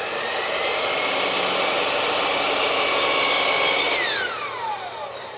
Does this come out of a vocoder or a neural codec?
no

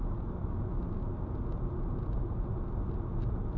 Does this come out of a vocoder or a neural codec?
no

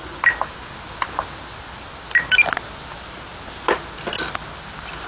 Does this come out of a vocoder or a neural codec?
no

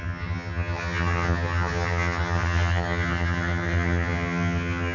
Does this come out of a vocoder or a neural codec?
yes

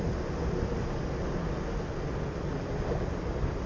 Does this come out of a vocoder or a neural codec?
no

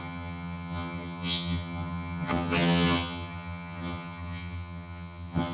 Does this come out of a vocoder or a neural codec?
yes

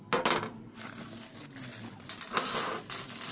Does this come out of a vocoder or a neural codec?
no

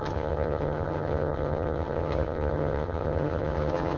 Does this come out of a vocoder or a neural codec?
yes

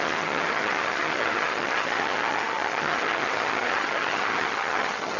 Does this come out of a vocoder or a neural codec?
yes